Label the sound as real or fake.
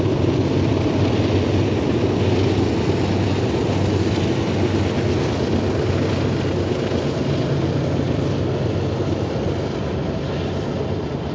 real